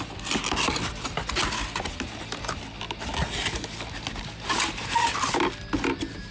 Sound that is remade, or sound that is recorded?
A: recorded